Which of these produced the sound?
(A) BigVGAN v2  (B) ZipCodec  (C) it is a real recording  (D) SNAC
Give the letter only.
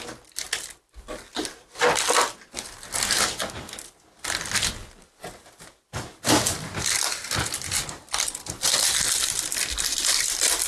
C